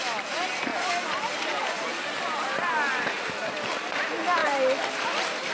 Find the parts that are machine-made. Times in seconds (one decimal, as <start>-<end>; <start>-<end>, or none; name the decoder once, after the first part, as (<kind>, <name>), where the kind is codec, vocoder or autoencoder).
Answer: none